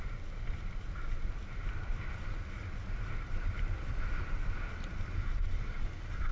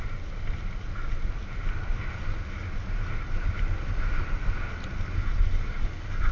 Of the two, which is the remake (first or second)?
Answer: first